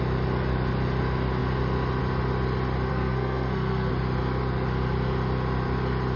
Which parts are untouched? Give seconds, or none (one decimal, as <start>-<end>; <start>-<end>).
0.0-2.9; 3.9-6.2